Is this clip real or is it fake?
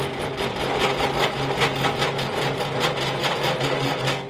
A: real